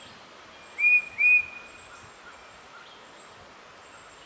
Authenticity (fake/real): real